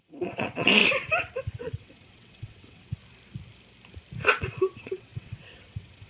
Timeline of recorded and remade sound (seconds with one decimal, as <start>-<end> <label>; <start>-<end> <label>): 0.0-0.8 remade; 0.8-1.4 recorded; 1.4-3.0 remade; 3.0-4.4 recorded; 4.4-6.1 remade